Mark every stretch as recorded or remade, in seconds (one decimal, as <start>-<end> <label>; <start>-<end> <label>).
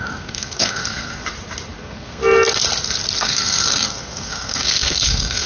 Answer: 0.0-1.2 remade; 1.2-1.8 recorded; 1.8-2.2 remade; 2.2-3.2 recorded; 3.2-5.5 remade